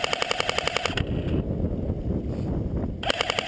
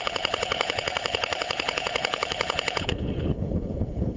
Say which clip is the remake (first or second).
second